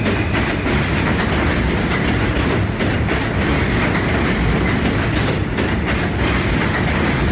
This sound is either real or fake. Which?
real